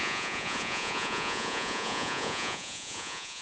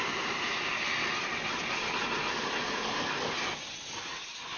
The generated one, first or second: first